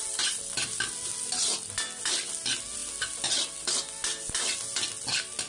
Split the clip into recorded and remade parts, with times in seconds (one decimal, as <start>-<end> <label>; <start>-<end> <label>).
0.0-5.5 recorded